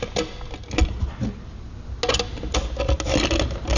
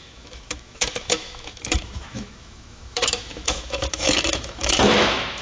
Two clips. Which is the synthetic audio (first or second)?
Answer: second